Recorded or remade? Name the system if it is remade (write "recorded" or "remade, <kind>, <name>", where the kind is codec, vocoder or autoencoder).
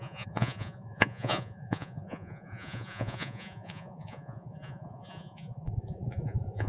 remade, vocoder, Vocos